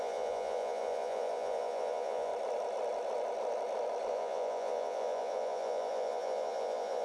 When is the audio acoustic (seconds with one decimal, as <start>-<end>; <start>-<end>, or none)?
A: 2.3-4.1